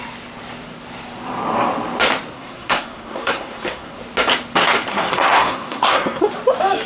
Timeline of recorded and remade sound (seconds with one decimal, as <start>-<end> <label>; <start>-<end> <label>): 0.0-2.3 recorded; 2.3-4.0 remade; 4.0-4.9 recorded; 4.9-6.2 remade; 6.2-6.9 recorded